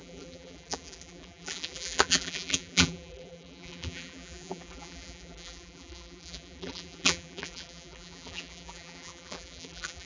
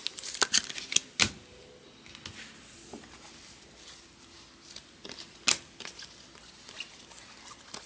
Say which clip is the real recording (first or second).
second